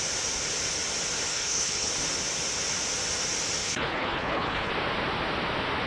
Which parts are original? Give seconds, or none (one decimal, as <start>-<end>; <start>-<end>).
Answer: 0.0-1.3; 1.9-3.6; 4.7-5.9